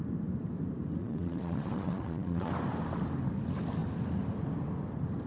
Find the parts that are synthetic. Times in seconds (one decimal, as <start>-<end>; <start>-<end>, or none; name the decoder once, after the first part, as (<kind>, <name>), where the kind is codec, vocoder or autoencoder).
1.0-2.5 (vocoder, Vocos)